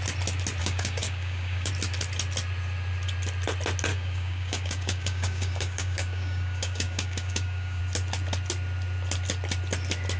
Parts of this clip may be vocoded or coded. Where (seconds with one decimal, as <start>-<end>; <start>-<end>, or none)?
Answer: 0.6-1.7; 3.9-7.8